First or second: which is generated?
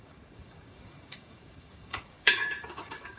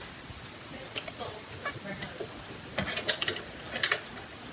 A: first